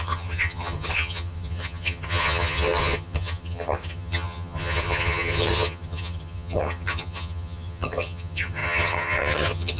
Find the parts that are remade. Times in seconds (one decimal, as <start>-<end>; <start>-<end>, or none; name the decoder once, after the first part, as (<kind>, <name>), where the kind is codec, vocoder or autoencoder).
0.0-9.8 (vocoder, HiFi-GAN)